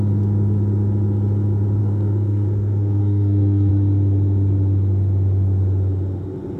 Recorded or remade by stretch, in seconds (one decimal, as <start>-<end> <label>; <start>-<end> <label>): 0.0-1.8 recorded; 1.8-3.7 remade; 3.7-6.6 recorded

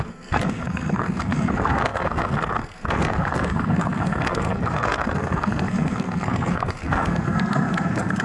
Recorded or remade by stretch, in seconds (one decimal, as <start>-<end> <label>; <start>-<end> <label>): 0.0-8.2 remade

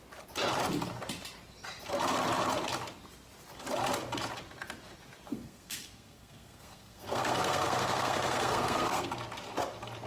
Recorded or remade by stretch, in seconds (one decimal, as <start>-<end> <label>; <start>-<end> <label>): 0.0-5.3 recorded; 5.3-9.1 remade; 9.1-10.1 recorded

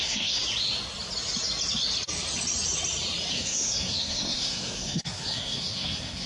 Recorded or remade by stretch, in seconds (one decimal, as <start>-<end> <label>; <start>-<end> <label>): 0.0-0.4 remade; 0.4-3.3 recorded; 3.3-6.3 remade

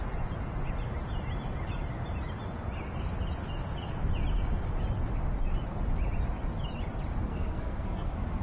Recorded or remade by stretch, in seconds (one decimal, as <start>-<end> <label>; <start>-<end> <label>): 0.0-7.3 recorded; 7.3-8.4 remade

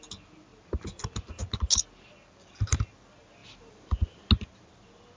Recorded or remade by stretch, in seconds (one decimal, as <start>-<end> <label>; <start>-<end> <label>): 0.0-5.2 recorded

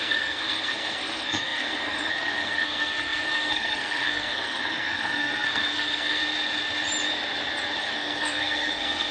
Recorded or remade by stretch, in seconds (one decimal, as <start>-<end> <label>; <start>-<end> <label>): 0.0-6.2 remade; 6.2-7.8 recorded; 7.8-9.1 remade